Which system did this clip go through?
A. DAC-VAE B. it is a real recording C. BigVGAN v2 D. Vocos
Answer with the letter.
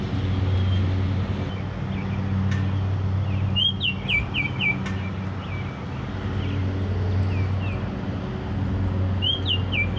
B